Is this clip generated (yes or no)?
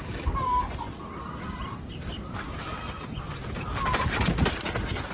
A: no